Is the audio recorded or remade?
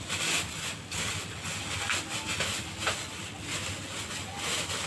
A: recorded